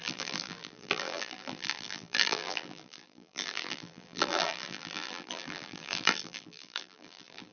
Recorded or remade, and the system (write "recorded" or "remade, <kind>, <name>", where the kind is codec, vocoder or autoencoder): remade, vocoder, BigVGAN v2